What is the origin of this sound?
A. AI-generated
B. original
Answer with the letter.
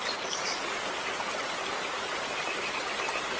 B